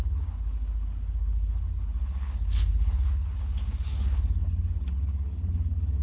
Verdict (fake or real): fake